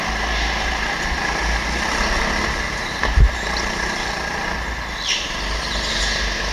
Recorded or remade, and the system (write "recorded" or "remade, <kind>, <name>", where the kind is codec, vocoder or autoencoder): remade, vocoder, BigVGAN v2